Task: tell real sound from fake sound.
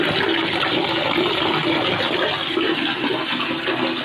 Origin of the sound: real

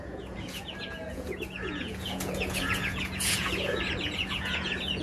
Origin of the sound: fake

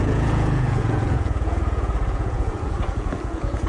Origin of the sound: fake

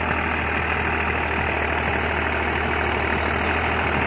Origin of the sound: real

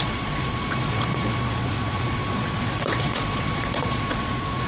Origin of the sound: fake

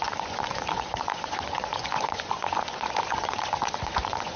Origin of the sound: fake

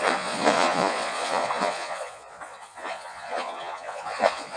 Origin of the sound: fake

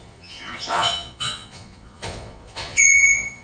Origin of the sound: fake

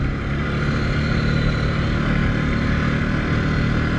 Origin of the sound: real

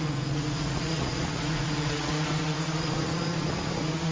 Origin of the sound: fake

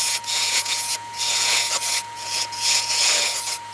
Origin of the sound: fake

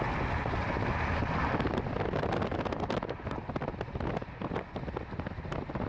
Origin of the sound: real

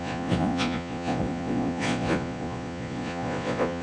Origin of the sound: fake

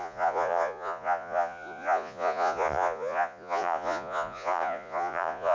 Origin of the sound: fake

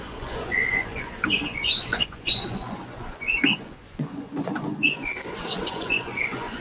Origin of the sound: fake